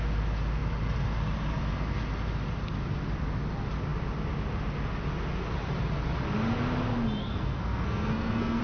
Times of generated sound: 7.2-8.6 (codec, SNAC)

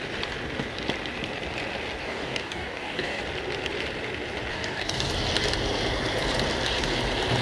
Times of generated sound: 2.0-3.2 (codec, DAC); 4.5-5.1

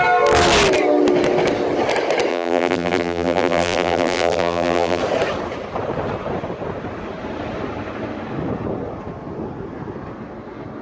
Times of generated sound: 2.3-5.0 (vocoder, BigVGAN v2)

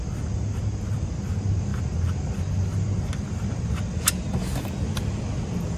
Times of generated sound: none

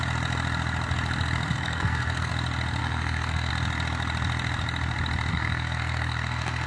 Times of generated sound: 1.5-2.3 (codec, SNAC); 2.8-3.5; 5.3-6.7

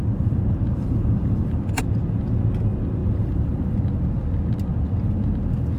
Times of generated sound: 0.8-1.8 (vocoder, BigVGAN v2); 3.0-4.2

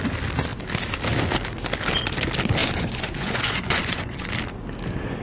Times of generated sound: 2.6-4.3 (vocoder, Vocos)